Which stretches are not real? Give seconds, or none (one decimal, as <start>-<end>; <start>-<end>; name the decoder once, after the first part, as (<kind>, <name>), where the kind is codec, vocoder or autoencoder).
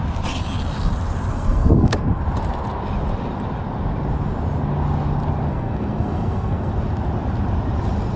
1.3-2.2 (codec, SNAC); 5.5-6.7